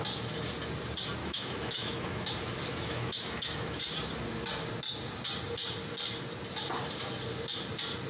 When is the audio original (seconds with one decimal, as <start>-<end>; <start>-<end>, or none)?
0.0-1.2; 2.3-2.7; 3.8-8.1